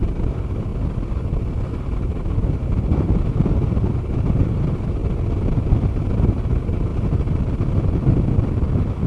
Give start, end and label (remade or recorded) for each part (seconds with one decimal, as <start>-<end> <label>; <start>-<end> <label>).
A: 0.0-0.7 remade; 0.7-1.8 recorded; 1.8-5.0 remade; 5.0-5.9 recorded; 5.9-6.9 remade; 6.9-9.1 recorded